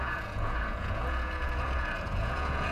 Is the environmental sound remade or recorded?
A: remade